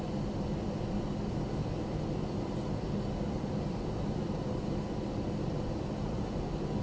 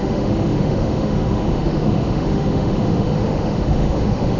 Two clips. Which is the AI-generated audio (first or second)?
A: second